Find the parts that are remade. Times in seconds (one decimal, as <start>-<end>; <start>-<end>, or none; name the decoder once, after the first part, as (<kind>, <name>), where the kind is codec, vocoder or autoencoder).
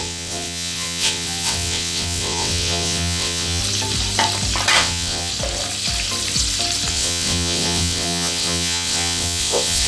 0.0-3.6 (vocoder, WaveNeXt); 4.8-5.3; 6.9-9.9